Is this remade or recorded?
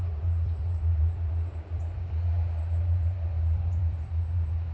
remade